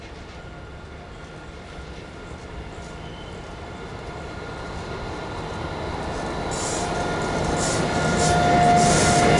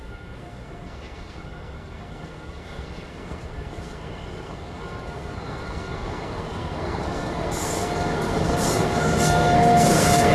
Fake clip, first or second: second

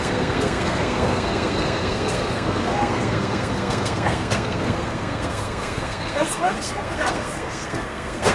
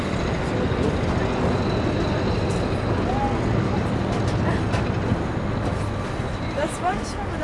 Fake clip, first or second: first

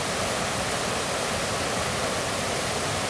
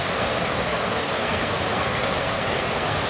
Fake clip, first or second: second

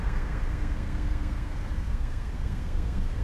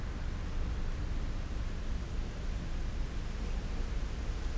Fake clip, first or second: first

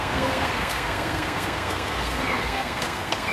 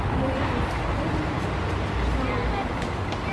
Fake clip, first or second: first